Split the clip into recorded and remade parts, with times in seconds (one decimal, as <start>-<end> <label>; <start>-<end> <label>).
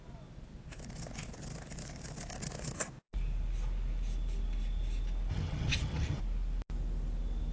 0.0-5.3 recorded; 5.3-6.2 remade; 6.2-7.5 recorded